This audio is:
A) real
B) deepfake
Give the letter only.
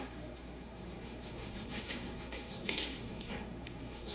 B